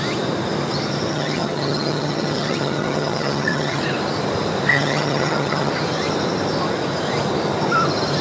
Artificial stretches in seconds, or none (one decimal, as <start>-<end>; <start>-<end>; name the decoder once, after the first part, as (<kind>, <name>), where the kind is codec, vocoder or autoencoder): 1.1-3.8 (vocoder, HiFi-GAN); 4.7-5.7